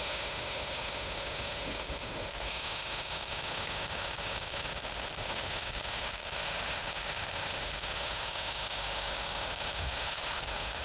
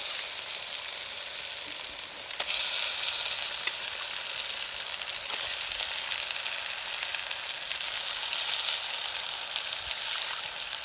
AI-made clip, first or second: first